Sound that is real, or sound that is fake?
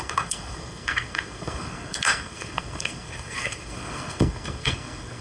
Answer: fake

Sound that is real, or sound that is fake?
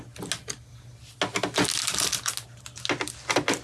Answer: real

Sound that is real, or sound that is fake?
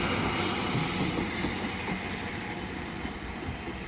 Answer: real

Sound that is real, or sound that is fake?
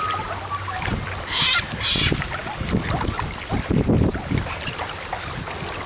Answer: real